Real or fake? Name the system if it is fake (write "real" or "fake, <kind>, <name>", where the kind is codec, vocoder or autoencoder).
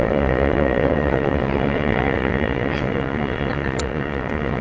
fake, vocoder, WaveNeXt